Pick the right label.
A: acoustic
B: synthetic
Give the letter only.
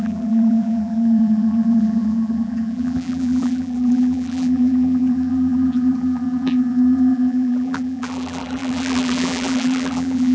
B